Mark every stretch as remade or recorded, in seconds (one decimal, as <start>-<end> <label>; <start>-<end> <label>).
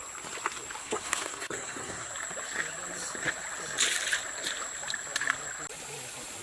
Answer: 0.0-0.8 recorded; 0.8-2.1 remade; 2.1-6.4 recorded